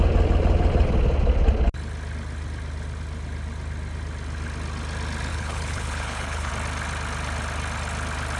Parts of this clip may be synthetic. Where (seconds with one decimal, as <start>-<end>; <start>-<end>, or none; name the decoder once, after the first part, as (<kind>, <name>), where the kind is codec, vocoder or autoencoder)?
5.3-6.5 (codec, HILCodec)